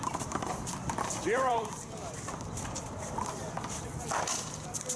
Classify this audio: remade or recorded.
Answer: remade